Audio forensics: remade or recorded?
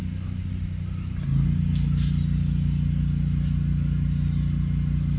recorded